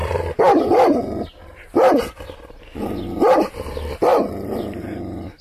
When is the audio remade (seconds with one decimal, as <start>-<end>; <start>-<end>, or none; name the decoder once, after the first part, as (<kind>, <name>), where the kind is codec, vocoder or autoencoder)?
none